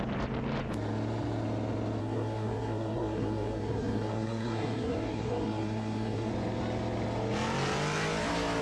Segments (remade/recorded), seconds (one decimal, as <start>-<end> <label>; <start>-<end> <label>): 0.0-2.0 recorded; 2.0-6.3 remade; 6.3-8.6 recorded